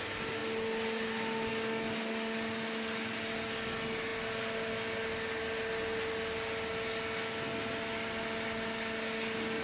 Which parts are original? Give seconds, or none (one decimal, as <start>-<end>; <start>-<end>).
0.0-9.6

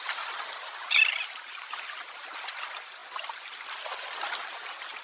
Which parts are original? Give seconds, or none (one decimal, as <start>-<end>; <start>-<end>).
0.0-5.0

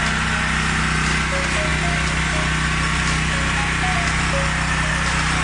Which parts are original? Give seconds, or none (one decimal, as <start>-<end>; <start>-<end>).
0.0-5.4

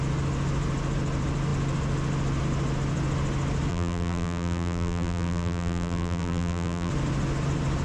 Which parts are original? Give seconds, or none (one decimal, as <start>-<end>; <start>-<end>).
0.0-3.7; 6.9-7.8